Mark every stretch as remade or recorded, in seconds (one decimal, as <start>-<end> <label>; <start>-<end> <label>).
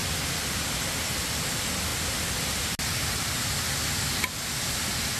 0.0-5.2 recorded